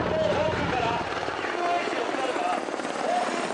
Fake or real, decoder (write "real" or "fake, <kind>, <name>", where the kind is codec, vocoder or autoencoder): real